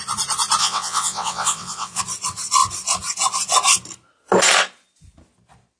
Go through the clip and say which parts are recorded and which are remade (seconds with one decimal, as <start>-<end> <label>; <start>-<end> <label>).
0.0-0.6 recorded; 0.6-2.0 remade; 2.0-5.8 recorded